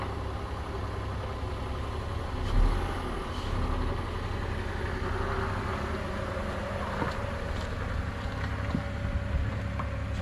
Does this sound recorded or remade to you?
recorded